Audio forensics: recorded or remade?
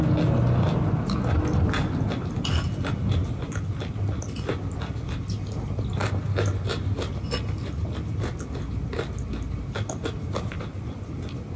recorded